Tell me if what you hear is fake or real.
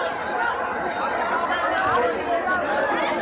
real